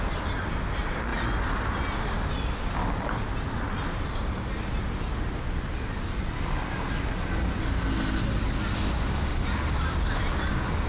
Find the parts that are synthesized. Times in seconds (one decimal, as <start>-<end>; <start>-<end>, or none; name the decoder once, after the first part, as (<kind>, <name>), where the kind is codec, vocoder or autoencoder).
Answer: 9.3-10.5 (vocoder, BigVGAN v2)